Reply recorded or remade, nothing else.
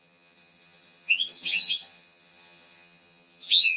remade